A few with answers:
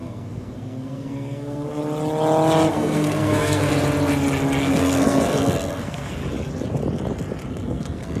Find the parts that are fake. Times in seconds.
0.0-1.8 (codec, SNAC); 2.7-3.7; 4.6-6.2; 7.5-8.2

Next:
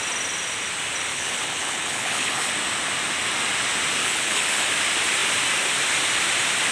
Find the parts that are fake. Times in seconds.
1.1-2.5 (codec, HILCodec); 4.0-4.7

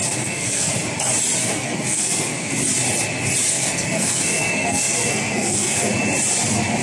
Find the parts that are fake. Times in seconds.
0.0-0.7 (codec, SNAC); 1.4-2.6; 3.5-5.9

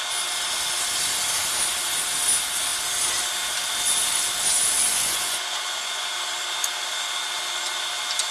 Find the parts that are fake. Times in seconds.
4.9-6.1 (vocoder, Vocos)

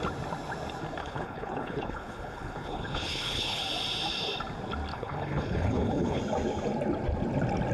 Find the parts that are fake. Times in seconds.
1.0-3.6 (codec, HILCodec); 4.9-6.2

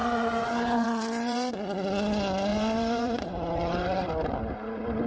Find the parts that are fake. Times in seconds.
0.0-1.5 (vocoder, BigVGAN v2); 2.5-4.1